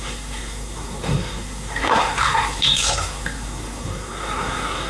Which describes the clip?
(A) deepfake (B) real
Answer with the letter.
A